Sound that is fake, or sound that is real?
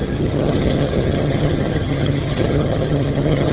fake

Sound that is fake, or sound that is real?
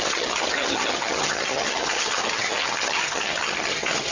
fake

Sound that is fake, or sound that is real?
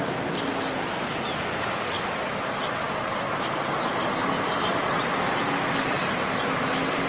real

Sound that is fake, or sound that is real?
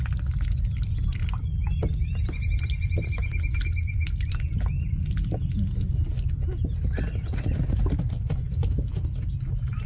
real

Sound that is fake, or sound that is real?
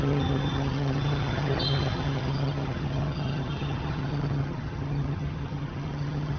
fake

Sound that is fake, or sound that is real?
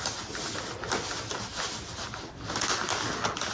real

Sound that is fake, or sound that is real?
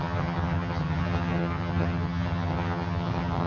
fake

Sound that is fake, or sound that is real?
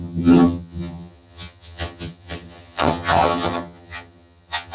fake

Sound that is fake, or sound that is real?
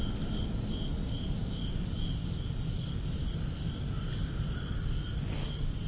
real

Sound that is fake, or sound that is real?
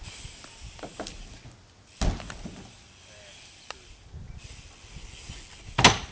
real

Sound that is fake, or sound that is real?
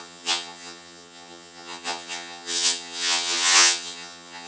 fake